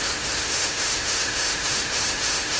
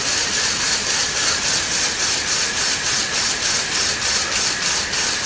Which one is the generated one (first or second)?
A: first